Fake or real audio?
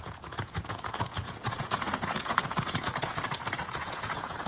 fake